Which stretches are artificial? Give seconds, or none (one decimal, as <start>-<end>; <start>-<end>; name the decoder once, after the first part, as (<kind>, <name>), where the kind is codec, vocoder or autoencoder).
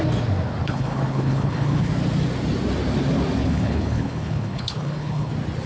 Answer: 0.6-1.9 (codec, HILCodec); 3.4-5.3